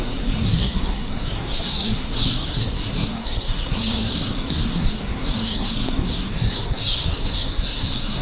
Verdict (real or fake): fake